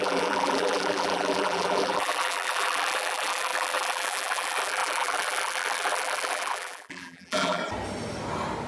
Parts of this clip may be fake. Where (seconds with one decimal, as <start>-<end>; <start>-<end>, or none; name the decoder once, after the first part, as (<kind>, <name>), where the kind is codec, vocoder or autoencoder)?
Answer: 0.0-7.6 (vocoder, BigVGAN v2)